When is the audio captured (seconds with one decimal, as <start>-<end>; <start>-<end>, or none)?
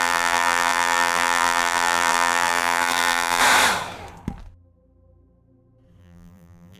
3.4-6.0